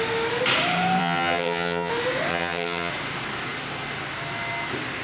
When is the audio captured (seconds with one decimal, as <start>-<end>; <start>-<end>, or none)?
0.0-1.0; 1.9-2.3; 2.9-5.0